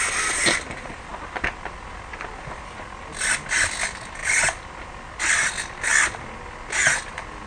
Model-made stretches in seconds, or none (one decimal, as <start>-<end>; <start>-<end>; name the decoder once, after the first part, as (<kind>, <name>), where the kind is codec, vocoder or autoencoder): none